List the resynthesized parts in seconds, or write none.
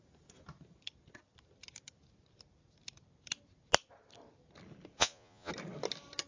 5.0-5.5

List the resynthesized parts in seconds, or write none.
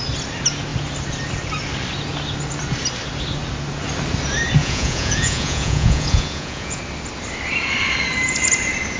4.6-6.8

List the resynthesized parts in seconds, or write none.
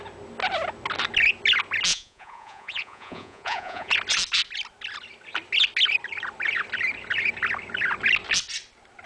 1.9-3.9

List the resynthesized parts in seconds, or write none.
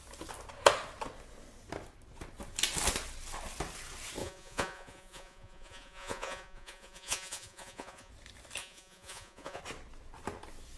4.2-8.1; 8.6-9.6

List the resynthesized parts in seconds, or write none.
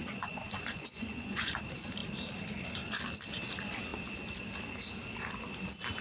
0.0-1.5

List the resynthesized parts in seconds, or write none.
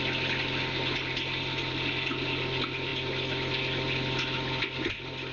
none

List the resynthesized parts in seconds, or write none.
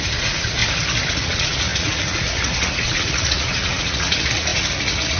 0.0-0.6; 1.1-5.2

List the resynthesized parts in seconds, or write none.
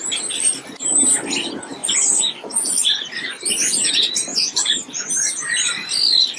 1.8-3.9; 4.3-5.1